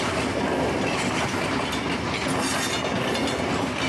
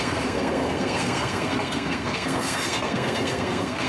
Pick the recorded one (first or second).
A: first